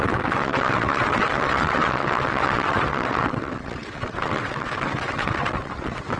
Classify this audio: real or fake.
fake